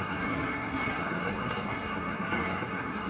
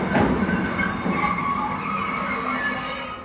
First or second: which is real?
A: second